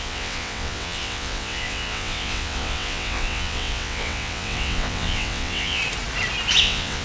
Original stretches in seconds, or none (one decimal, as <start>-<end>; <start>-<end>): 5.8-6.6